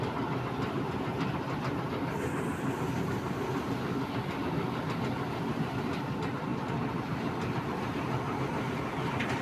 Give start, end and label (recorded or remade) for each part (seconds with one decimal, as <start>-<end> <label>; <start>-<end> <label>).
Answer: 0.0-9.4 recorded